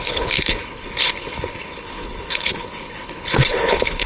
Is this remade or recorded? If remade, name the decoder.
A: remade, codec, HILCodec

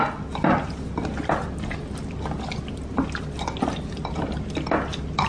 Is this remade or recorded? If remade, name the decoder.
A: recorded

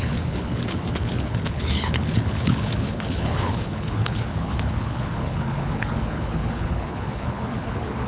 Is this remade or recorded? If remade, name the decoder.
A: remade, codec, HILCodec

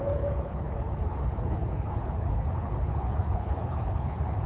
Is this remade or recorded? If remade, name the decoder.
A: remade, codec, HILCodec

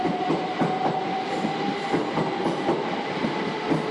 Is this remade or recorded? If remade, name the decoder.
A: recorded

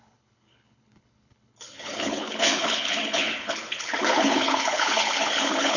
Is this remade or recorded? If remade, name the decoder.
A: remade, codec, HILCodec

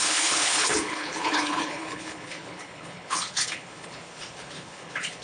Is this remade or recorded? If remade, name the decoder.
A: remade, codec, HILCodec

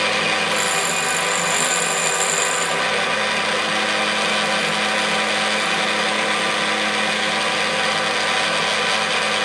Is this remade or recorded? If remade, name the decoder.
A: recorded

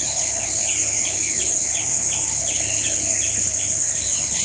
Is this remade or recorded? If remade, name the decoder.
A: remade, codec, HILCodec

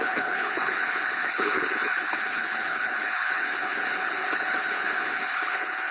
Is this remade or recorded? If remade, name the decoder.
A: remade, codec, HILCodec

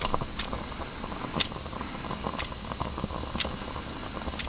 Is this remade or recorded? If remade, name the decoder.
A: recorded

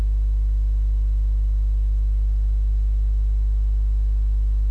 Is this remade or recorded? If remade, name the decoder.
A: recorded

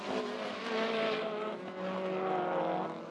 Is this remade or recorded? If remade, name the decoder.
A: recorded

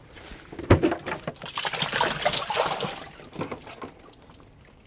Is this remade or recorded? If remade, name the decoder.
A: recorded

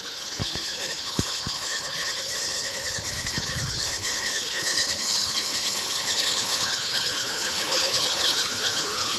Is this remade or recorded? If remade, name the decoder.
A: remade, codec, HILCodec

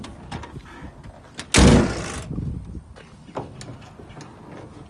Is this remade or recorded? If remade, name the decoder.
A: recorded